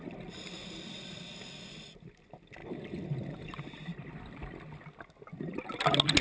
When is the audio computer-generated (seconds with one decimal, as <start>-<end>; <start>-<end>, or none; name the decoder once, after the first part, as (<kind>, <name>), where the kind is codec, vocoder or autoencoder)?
none